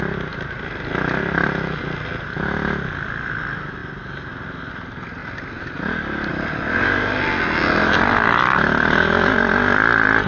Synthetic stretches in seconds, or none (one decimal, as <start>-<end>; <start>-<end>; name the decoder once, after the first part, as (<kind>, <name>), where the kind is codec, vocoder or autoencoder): none